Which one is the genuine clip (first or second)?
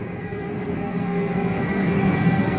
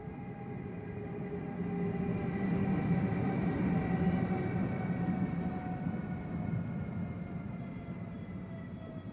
second